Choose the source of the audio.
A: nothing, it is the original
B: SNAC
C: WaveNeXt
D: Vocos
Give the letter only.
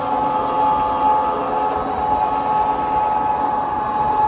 A